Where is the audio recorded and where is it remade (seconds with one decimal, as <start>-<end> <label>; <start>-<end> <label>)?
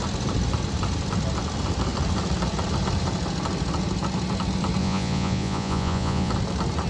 0.0-4.8 recorded; 4.8-6.3 remade; 6.3-6.9 recorded